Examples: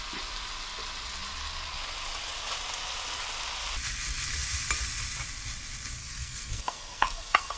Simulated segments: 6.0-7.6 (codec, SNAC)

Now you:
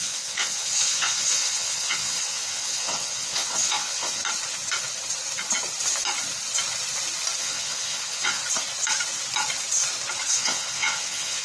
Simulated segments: 0.0-4.2 (vocoder, WaveNeXt); 7.4-8.4; 10.3-11.4

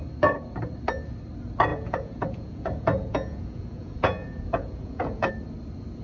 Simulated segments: 1.7-5.3 (vocoder, Vocos)